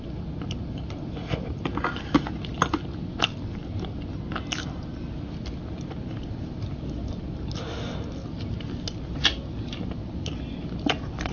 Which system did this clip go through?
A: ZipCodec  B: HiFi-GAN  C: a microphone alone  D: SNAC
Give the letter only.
C